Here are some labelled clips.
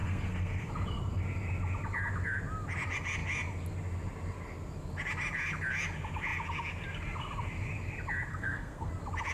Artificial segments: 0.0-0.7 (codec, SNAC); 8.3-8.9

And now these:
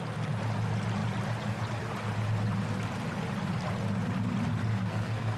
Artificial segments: 4.7-5.4 (codec, SNAC)